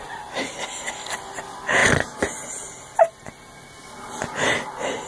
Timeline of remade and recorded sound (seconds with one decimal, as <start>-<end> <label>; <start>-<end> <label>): 0.0-5.1 recorded